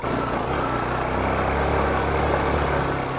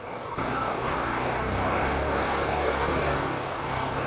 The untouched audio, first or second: first